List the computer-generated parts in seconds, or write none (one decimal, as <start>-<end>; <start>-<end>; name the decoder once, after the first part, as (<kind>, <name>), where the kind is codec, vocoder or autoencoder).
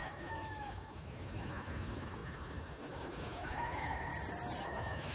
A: 0.0-4.1 (autoencoder, DAC-VAE); 4.6-5.1